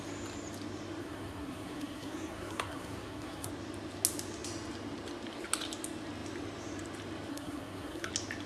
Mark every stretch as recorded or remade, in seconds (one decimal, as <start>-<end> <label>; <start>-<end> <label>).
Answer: 0.0-1.0 recorded; 1.0-3.5 remade; 3.5-7.3 recorded; 7.3-8.1 remade; 8.1-8.5 recorded